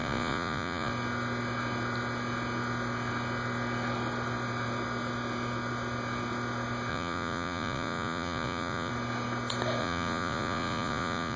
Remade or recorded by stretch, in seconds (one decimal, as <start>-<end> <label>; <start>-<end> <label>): 0.0-0.9 remade; 0.9-6.9 recorded; 6.9-8.9 remade; 8.9-9.8 recorded; 9.8-11.4 remade